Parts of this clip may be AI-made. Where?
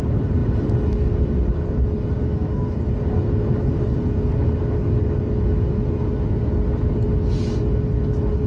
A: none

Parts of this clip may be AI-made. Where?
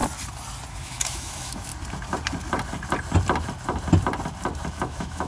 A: 0.7-1.7 (autoencoder, DAC-VAE); 4.7-5.3